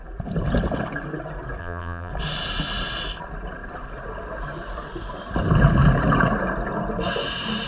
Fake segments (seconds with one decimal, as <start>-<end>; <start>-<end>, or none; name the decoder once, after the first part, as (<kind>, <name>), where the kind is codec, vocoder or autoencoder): 1.6-2.1 (vocoder, BigVGAN v2)